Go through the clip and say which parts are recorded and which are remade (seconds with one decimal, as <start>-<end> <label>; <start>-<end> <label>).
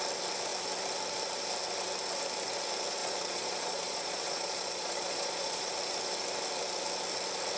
0.0-3.0 recorded; 3.0-5.7 remade; 5.7-7.6 recorded